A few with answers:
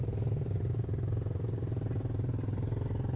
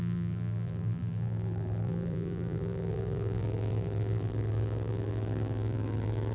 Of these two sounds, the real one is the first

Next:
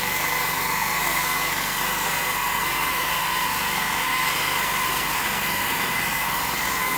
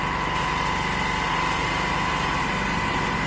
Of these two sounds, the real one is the second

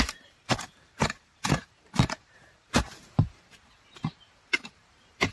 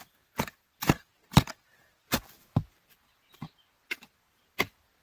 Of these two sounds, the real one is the second